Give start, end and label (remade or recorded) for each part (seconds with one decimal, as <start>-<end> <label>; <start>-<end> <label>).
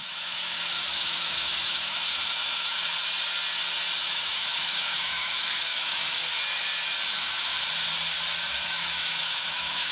0.0-2.9 remade; 2.9-4.1 recorded; 4.1-6.2 remade; 6.2-7.1 recorded; 7.1-7.5 remade; 7.5-8.5 recorded; 8.5-9.9 remade